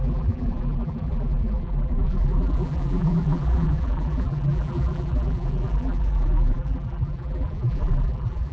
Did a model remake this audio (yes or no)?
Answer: yes